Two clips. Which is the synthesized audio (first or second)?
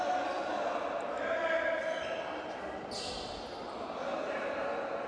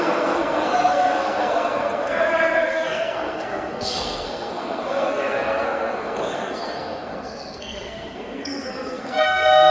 second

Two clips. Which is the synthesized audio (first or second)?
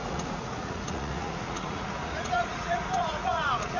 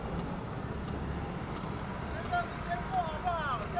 first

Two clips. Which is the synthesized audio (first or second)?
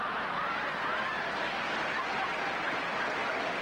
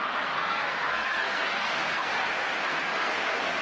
second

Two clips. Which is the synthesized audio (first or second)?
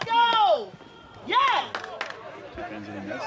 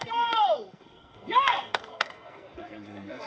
second